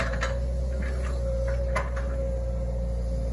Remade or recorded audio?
recorded